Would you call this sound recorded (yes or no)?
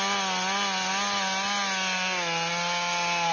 yes